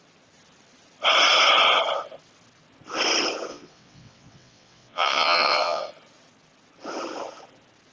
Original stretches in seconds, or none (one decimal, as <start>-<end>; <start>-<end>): 0.0-3.5; 5.9-7.9